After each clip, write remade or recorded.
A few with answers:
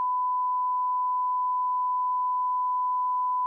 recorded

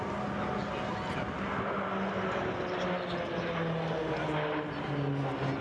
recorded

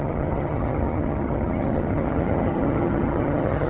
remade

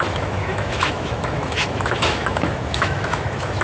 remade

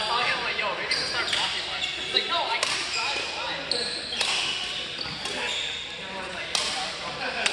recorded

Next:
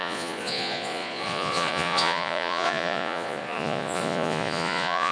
remade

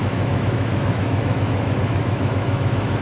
remade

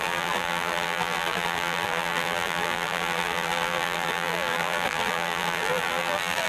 remade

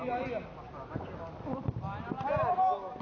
recorded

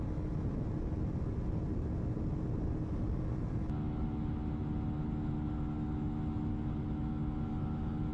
recorded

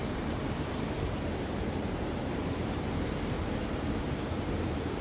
remade